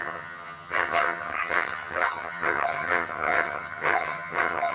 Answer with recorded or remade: remade